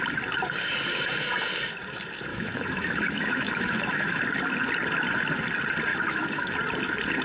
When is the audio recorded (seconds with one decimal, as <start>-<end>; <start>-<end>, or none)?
0.0-2.3; 4.2-5.9; 6.5-7.2